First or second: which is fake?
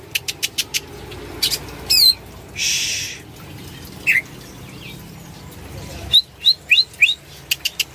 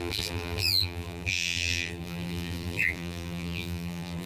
second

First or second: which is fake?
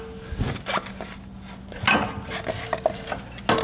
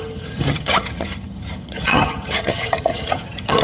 second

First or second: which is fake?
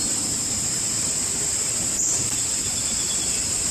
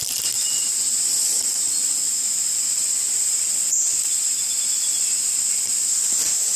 first